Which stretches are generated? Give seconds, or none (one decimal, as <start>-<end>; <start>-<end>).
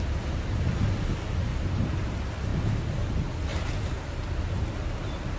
1.5-2.1; 3.5-4.3